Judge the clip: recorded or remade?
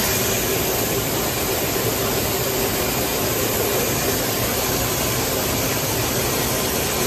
remade